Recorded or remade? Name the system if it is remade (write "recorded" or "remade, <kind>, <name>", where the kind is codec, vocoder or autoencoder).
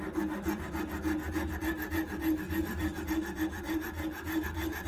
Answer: recorded